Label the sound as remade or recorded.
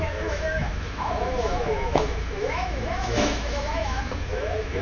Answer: remade